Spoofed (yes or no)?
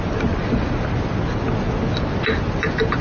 no